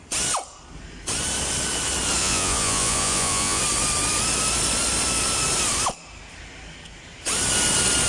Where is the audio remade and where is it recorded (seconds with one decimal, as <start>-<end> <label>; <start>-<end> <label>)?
0.0-2.2 recorded; 2.2-3.6 remade; 3.6-8.1 recorded